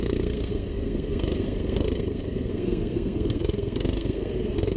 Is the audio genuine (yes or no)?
no